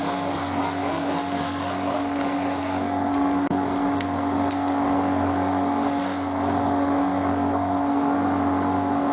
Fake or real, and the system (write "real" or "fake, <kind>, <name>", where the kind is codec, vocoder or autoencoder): fake, codec, SNAC